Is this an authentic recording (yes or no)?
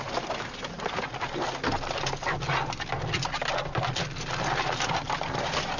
yes